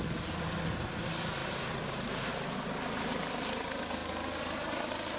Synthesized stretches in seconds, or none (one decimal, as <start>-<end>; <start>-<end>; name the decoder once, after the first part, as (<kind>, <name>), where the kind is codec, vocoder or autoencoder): 1.4-2.5 (vocoder, BigVGAN v2)